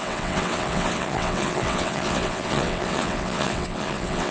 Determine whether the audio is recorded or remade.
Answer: remade